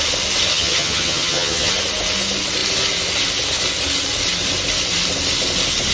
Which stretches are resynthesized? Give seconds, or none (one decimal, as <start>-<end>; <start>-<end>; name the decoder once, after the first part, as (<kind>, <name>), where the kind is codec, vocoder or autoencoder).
0.5-1.7 (vocoder, HiFi-GAN)